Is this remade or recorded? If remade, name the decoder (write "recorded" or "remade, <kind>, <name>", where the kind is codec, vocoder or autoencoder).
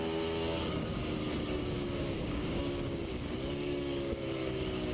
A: remade, codec, DAC